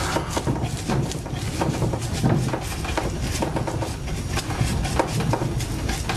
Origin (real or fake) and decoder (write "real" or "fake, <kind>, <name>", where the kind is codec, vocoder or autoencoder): real